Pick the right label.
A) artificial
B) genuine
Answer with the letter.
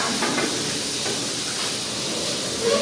B